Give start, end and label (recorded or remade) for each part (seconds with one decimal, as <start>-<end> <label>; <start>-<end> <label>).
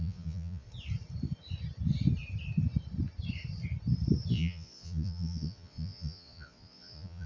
0.0-0.7 remade; 0.7-4.3 recorded; 4.3-7.3 remade